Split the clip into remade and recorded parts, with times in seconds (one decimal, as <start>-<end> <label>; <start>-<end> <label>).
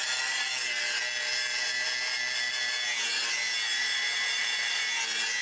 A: 0.0-3.7 recorded; 3.7-5.0 remade; 5.0-5.4 recorded